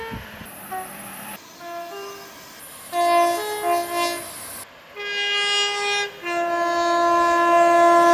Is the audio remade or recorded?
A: recorded